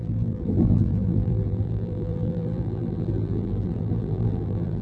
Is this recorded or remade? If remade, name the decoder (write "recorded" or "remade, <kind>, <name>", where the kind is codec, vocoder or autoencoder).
remade, vocoder, BigVGAN v2